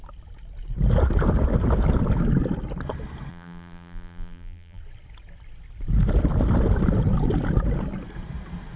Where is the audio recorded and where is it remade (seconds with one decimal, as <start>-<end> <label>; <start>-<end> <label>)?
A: 0.0-3.3 recorded; 3.3-4.8 remade; 4.8-8.8 recorded